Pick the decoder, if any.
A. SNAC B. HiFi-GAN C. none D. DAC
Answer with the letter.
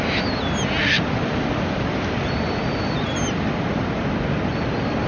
C